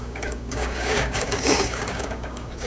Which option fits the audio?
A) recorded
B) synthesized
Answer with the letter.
B